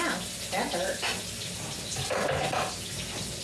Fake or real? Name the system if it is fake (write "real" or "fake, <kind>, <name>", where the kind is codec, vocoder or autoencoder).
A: real